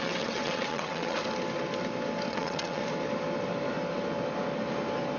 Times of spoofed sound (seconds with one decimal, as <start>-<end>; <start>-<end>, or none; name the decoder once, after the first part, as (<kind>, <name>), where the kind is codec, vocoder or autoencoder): 0.0-1.2 (vocoder, WaveNeXt); 2.3-2.8